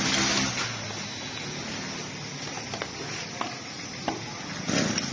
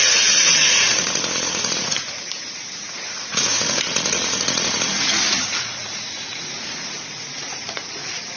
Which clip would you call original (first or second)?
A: first